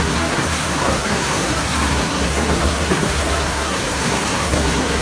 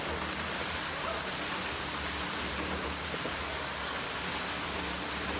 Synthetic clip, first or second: first